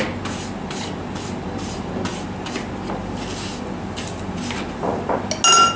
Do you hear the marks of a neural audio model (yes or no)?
no